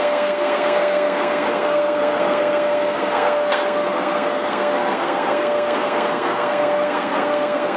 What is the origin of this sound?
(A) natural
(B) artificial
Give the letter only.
B